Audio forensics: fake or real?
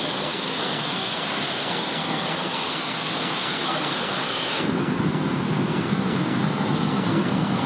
fake